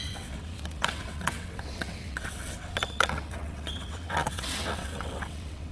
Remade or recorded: remade